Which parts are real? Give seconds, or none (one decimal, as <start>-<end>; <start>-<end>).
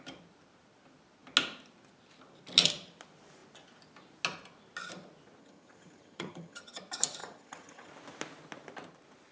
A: 0.0-5.4; 6.8-7.2; 7.9-9.3